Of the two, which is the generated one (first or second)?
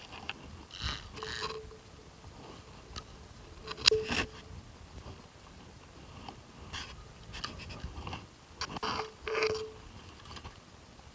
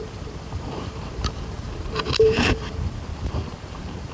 second